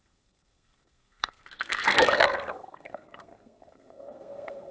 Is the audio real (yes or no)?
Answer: no